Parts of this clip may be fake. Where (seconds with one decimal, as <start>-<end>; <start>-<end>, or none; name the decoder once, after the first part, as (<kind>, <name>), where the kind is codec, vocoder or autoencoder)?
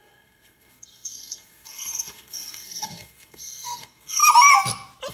0.0-4.2 (codec, SNAC)